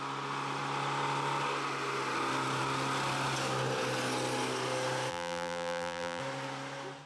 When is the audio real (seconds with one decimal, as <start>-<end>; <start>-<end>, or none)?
0.0-5.1; 6.2-7.1